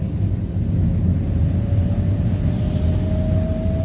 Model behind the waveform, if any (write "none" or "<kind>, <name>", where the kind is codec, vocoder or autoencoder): none